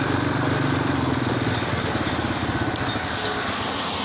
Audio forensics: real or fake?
real